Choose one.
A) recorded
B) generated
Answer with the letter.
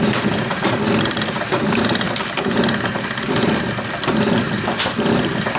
A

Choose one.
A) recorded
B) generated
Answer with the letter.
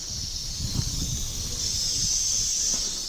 A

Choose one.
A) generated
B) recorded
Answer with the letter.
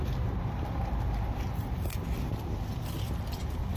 B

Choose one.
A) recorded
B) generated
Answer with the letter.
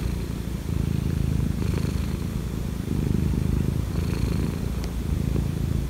A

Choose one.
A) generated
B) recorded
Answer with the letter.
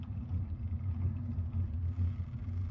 A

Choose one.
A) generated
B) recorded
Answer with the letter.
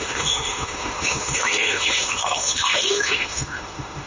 A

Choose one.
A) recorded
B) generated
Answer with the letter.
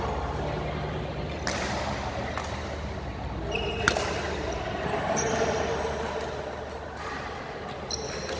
A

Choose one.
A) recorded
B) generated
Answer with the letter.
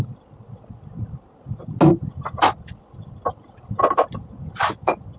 A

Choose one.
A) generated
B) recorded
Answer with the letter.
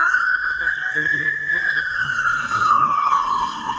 A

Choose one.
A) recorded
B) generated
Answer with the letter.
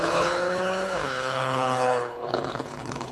B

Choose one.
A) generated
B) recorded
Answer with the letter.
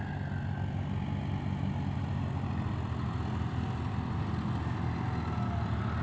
B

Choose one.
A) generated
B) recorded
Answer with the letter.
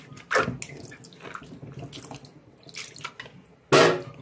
B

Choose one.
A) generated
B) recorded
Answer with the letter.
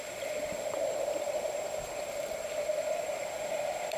A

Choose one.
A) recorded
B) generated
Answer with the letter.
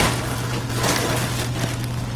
A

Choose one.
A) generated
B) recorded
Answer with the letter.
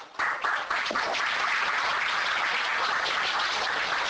B